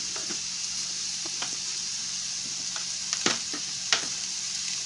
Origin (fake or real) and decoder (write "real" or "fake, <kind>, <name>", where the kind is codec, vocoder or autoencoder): fake, vocoder, BigVGAN v2